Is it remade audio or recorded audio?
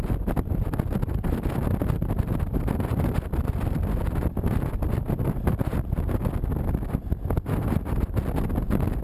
recorded